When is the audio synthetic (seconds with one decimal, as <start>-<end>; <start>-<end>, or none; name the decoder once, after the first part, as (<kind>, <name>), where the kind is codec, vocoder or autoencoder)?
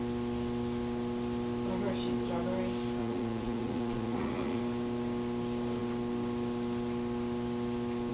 3.0-4.6 (vocoder, Vocos)